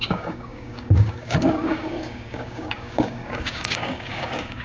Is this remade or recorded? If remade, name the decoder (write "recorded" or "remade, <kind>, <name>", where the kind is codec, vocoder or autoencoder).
remade, codec, DAC